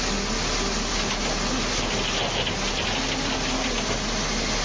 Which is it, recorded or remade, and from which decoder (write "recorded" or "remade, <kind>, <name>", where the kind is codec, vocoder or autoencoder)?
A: recorded